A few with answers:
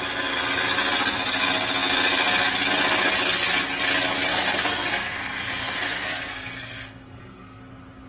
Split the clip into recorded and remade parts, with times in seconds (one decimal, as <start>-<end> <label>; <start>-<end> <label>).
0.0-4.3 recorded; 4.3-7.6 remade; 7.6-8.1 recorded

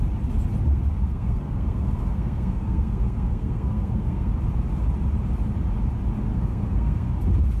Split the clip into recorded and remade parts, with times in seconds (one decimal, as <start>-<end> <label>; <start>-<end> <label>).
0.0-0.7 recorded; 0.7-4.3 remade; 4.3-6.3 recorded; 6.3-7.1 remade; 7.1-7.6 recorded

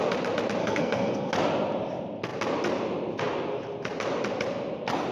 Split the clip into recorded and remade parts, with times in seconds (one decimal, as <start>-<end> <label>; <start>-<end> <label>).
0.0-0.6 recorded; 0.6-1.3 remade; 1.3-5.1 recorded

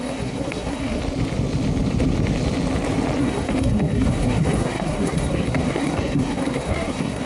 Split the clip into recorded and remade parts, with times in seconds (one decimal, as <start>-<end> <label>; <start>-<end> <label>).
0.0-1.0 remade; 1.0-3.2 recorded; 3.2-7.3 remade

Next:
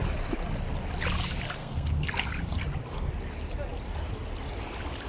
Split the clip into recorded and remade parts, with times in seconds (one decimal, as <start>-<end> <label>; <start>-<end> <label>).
0.0-1.6 recorded; 1.6-2.1 remade; 2.1-5.1 recorded

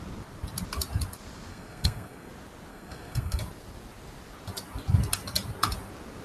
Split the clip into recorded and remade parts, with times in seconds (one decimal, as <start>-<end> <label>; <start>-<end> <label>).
0.0-1.5 recorded; 1.5-2.3 remade; 2.3-2.7 recorded; 2.7-3.4 remade; 3.4-6.2 recorded